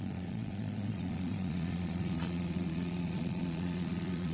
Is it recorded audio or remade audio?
remade